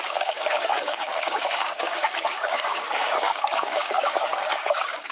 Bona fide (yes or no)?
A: no